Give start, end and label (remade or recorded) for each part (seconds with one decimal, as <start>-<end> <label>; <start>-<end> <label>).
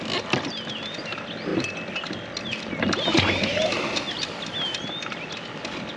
0.0-6.0 recorded